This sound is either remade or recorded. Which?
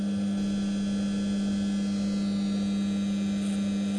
recorded